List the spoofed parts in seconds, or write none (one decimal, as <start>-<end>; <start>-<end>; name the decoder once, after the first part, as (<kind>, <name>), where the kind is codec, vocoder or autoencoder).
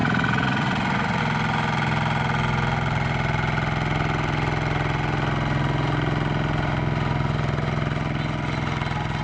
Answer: 0.0-1.2 (vocoder, Vocos)